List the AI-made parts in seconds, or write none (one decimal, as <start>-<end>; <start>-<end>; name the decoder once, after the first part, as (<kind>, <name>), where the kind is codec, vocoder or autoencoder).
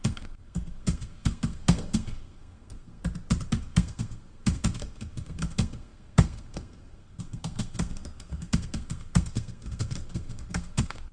0.0-3.0 (codec, SNAC); 3.6-11.1